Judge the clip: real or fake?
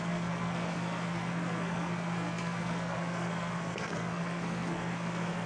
fake